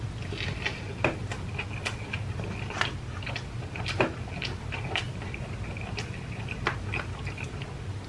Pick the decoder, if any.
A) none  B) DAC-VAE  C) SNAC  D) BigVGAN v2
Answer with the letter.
A